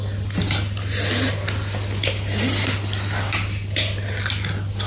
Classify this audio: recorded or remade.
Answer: recorded